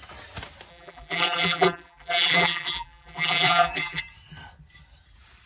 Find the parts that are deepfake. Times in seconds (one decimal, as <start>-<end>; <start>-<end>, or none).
0.7-4.0